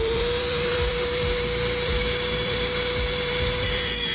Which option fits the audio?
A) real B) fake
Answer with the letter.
B